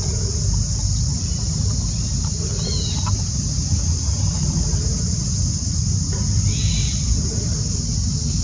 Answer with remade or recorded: recorded